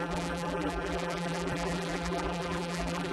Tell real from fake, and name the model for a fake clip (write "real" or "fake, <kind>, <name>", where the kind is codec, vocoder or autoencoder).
fake, vocoder, BigVGAN v2